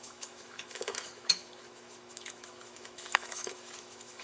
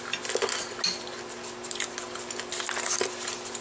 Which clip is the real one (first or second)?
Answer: second